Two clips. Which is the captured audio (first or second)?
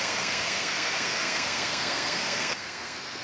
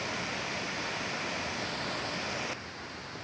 second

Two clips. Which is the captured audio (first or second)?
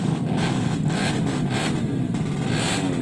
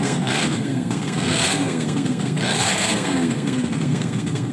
first